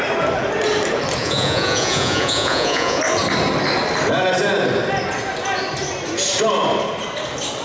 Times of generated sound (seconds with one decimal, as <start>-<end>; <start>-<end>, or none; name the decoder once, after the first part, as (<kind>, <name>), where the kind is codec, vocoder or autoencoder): 1.2-3.0 (vocoder, Vocos)